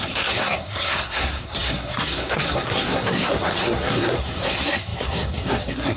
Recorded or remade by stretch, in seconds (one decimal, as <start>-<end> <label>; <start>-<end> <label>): 0.0-6.0 remade